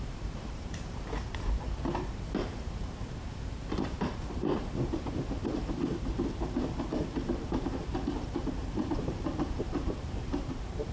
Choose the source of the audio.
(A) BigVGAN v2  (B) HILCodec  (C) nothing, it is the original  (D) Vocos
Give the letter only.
A